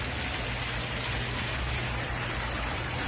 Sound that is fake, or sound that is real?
real